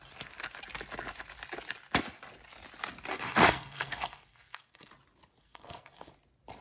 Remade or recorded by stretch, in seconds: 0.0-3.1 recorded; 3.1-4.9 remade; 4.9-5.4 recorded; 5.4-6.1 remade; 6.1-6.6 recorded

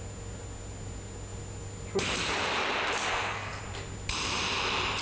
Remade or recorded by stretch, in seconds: 0.0-3.1 recorded; 3.1-3.6 remade; 3.6-5.0 recorded

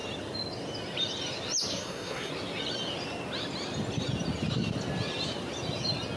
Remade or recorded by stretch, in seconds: 0.0-1.7 recorded; 1.7-2.3 remade; 2.3-6.2 recorded

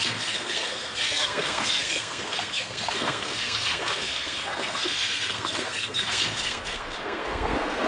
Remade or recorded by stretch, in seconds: 0.0-7.9 remade